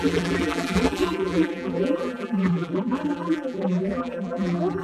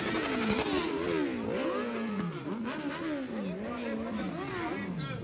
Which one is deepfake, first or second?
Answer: first